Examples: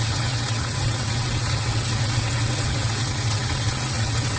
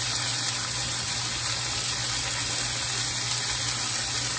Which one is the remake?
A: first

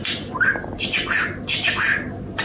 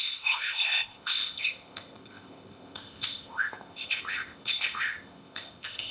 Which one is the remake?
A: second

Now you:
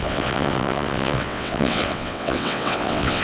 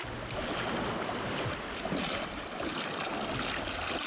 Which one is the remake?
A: first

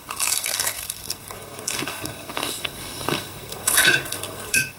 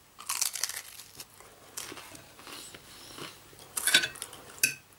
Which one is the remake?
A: first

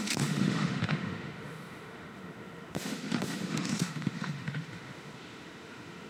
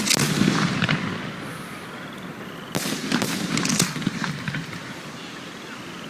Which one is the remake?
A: first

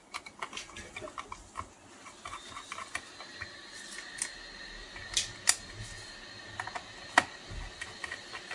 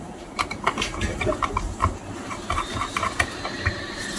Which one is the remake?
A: second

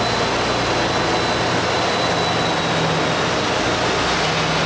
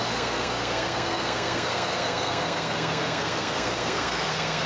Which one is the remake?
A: second